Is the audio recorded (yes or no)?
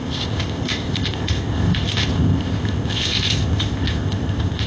no